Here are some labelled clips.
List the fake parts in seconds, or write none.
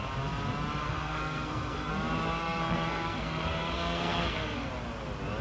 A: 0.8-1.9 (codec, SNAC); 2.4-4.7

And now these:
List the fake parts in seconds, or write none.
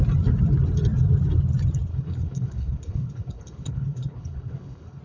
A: 1.9-5.0 (codec, HILCodec)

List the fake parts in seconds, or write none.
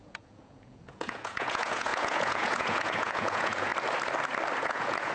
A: 0.0-3.7 (vocoder, Vocos); 4.6-5.1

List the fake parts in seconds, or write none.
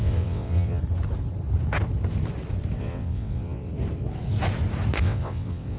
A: 0.0-0.8 (vocoder, WaveNeXt); 2.8-3.7; 5.0-5.8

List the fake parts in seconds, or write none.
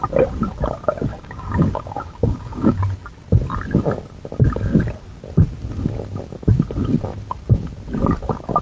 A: 1.1-2.8 (codec, DAC)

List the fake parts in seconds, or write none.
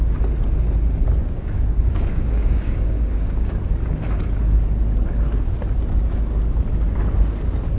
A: 1.2-3.5 (codec, DAC)